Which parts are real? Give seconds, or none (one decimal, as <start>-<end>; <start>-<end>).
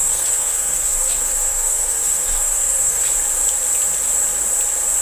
3.0-5.0